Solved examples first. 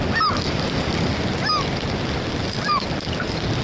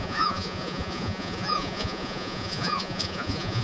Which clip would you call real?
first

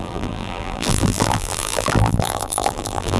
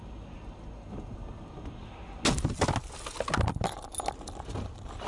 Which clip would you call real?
second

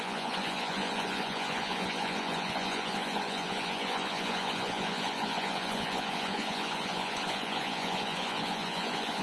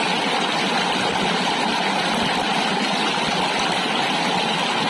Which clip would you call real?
second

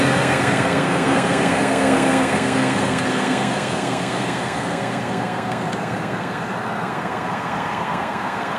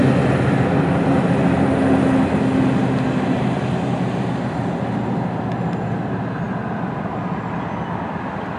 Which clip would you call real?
second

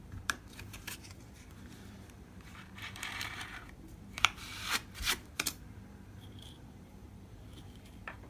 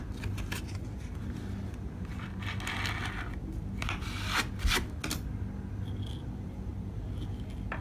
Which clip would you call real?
second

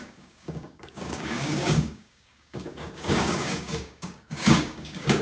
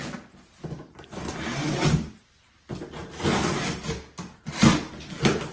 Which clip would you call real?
second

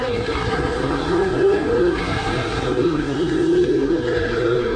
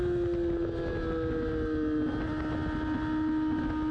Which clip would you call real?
second